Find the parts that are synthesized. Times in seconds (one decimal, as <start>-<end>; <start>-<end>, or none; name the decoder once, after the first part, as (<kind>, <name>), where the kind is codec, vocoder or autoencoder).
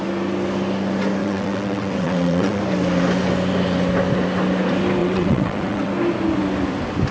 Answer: 1.2-2.6 (vocoder, WaveNeXt); 5.0-5.9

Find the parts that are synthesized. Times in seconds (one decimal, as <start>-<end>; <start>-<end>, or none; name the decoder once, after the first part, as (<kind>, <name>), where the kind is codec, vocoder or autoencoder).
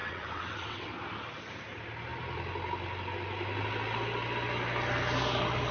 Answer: 0.0-0.9 (vocoder, WaveNeXt)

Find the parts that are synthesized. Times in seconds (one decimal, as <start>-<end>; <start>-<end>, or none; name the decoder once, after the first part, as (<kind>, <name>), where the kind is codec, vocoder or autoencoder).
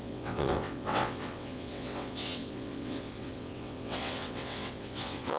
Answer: 0.0-5.4 (vocoder, WaveNeXt)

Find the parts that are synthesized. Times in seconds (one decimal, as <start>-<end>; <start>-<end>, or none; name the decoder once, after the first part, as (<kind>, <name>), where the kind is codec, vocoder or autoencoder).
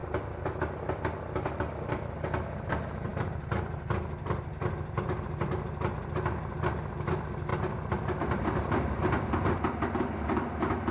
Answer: none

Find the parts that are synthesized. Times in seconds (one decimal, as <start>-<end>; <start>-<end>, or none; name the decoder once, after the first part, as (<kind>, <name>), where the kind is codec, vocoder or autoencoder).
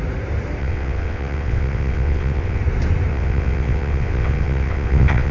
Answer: 0.6-2.6 (vocoder, WaveNeXt); 3.1-5.3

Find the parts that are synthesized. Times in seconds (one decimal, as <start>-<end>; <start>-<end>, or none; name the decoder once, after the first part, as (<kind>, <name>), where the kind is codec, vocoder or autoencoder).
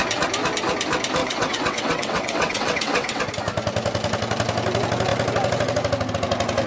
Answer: 1.2-3.2 (vocoder, WaveNeXt)